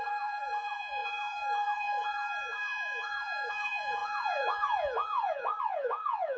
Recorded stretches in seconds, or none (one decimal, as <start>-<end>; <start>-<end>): none